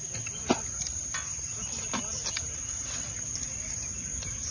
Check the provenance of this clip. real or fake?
real